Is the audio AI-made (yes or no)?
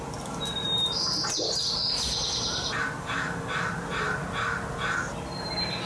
no